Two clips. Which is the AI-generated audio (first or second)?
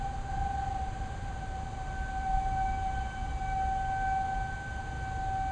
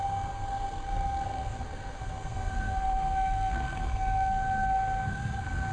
second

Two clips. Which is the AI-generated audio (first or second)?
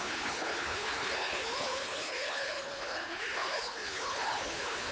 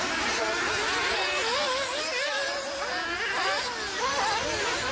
first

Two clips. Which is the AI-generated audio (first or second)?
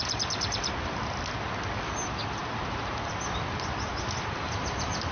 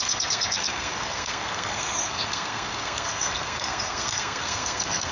second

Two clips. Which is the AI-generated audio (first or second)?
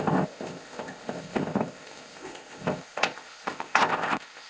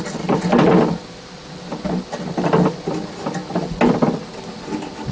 first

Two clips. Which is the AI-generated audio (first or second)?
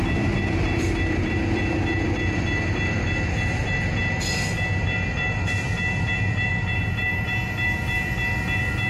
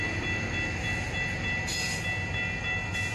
first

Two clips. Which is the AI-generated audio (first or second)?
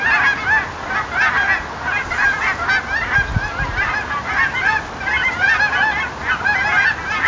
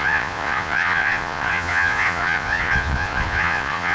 second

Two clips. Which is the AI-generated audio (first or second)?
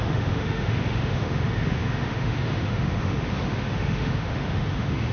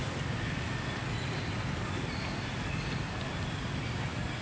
first